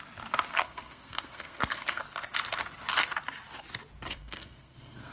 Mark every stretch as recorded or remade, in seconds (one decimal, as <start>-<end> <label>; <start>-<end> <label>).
0.0-0.5 recorded; 0.5-2.0 remade; 2.0-4.1 recorded; 4.1-5.1 remade